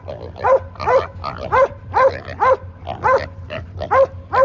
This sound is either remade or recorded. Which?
recorded